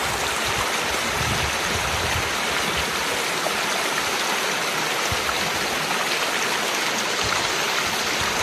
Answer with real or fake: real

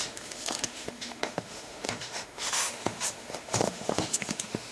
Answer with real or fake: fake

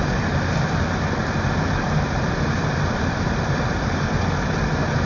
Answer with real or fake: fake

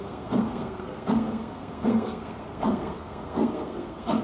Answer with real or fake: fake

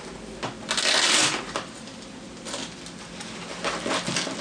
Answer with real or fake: real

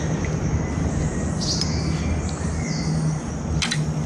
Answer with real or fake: real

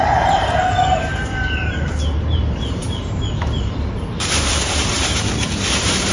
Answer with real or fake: fake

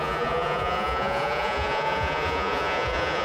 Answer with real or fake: fake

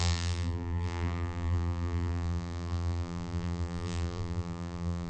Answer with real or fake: fake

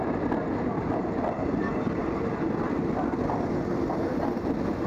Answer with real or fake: real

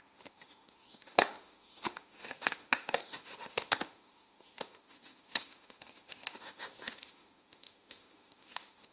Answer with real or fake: fake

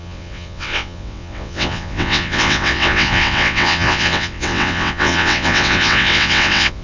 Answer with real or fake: fake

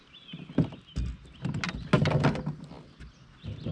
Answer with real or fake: real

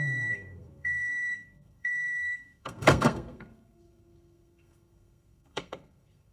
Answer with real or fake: fake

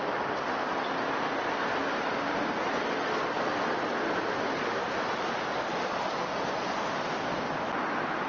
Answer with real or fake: real